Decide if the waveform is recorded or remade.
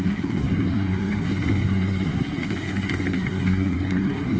remade